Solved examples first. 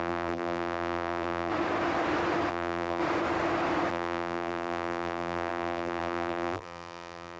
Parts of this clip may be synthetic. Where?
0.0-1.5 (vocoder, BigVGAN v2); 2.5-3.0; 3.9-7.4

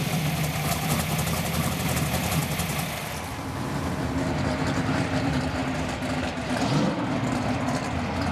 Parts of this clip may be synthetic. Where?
0.0-5.6 (vocoder, BigVGAN v2)

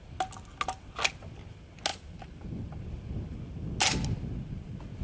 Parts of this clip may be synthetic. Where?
none

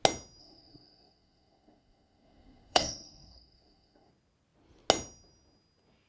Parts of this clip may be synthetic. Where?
0.4-4.1 (codec, SNAC)

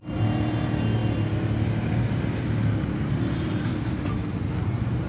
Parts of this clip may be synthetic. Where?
none